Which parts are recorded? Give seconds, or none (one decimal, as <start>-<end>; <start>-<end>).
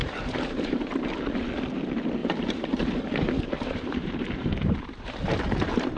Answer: 1.1-2.2